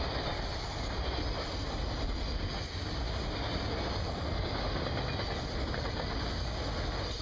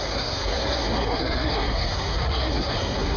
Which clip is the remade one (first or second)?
second